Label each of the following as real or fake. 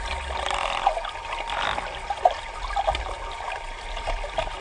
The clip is real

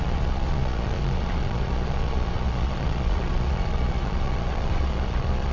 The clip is fake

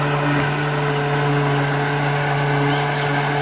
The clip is real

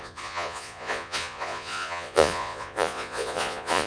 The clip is fake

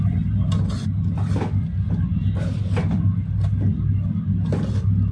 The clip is real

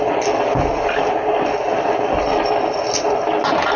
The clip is real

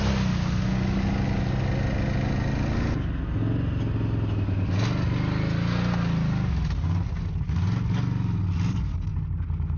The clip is real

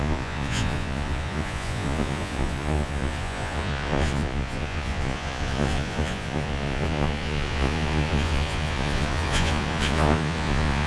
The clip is fake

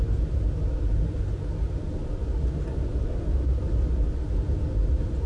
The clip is real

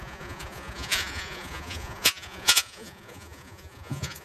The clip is fake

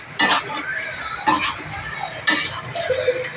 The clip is real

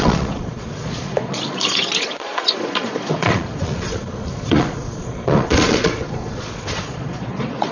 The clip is fake